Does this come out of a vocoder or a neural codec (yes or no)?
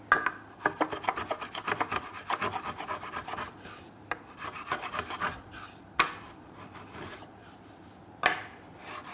no